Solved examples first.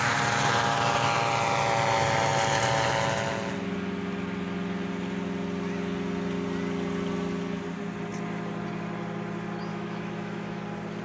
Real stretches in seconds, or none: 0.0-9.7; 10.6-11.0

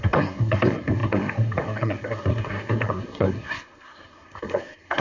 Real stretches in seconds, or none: none

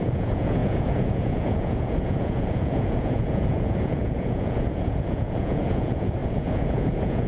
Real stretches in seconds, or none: none